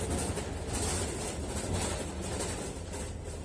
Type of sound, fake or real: real